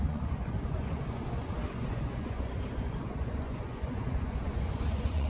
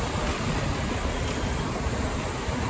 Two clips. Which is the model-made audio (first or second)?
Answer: first